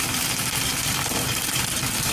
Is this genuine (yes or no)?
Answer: no